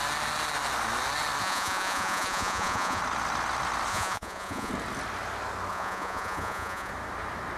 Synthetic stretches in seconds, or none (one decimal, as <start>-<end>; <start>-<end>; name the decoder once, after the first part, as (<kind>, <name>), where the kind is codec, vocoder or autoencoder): 1.4-3.0 (vocoder, Vocos); 3.9-4.7; 5.7-6.9